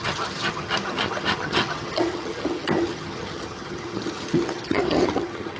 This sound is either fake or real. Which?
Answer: fake